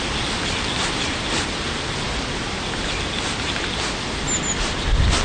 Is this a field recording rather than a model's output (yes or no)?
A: yes